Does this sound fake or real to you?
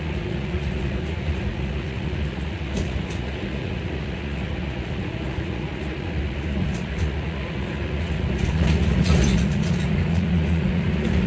fake